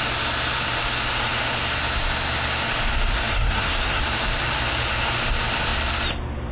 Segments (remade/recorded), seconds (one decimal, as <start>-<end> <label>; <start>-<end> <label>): 0.0-3.3 recorded; 3.3-4.0 remade; 4.0-6.5 recorded